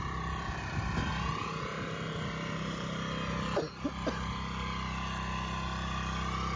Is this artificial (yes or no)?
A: no